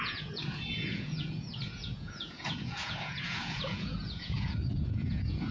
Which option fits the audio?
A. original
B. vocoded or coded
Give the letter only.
B